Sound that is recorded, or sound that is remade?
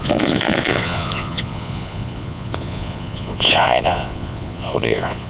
remade